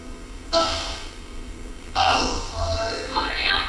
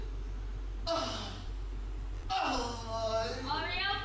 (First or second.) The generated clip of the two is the first